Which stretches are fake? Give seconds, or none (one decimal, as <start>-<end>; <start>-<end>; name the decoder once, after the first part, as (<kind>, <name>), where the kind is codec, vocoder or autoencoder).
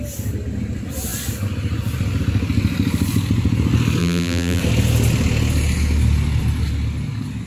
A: 4.0-4.6 (vocoder, BigVGAN v2)